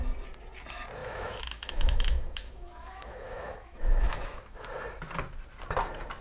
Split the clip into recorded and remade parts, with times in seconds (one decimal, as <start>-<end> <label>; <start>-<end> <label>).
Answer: 0.0-1.0 recorded; 1.0-4.7 remade; 4.7-6.2 recorded